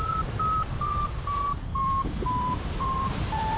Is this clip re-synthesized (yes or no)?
yes